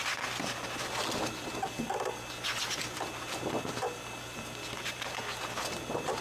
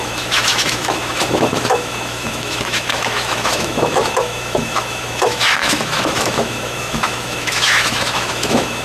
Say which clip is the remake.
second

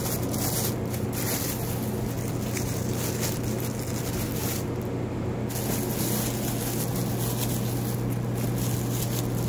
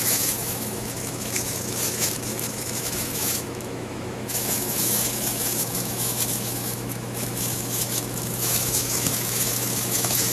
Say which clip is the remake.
second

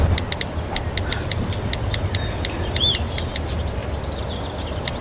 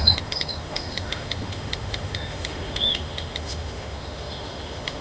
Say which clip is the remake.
second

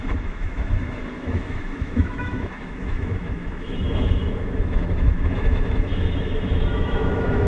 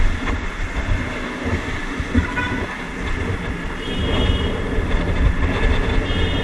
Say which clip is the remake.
first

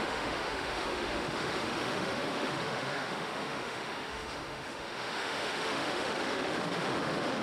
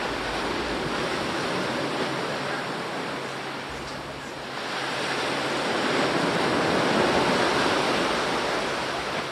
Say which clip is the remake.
first